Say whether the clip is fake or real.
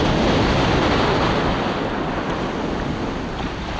real